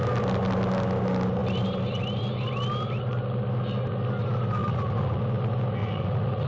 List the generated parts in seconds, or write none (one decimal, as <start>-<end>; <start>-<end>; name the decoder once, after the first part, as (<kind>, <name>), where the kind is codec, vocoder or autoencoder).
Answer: 4.6-5.2 (vocoder, Vocos); 5.8-6.5